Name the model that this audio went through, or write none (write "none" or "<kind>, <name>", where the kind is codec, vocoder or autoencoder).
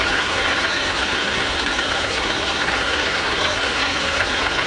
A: codec, SNAC